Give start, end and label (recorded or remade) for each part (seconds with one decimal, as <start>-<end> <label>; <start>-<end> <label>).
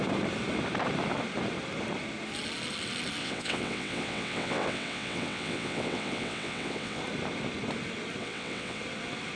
0.0-3.2 recorded; 3.2-7.0 remade; 7.0-8.2 recorded; 8.2-8.8 remade; 8.8-9.4 recorded